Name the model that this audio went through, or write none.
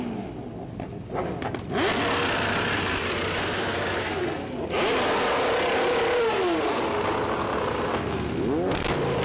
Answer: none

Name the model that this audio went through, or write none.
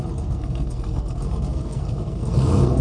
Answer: codec, SNAC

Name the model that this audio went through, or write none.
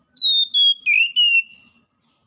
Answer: none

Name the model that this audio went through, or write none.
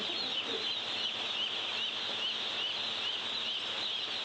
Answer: none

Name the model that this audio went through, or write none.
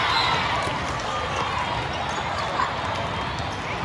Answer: none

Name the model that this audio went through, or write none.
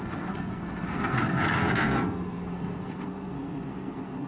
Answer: codec, SNAC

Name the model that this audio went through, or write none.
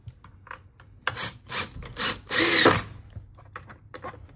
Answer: none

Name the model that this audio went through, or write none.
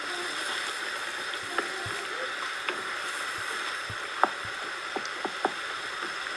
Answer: none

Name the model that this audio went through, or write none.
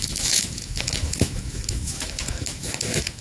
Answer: autoencoder, DAC-VAE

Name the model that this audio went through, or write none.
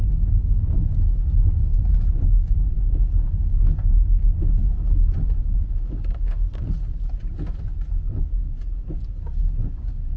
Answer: none